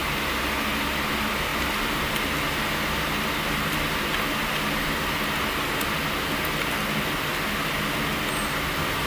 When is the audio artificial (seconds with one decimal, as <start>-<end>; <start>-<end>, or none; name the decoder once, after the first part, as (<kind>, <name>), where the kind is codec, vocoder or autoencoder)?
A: 1.5-2.4 (vocoder, BigVGAN v2)